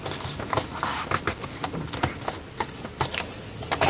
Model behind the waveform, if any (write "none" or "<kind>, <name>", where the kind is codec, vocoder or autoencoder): none